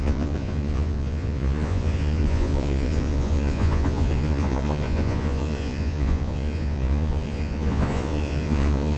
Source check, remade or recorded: remade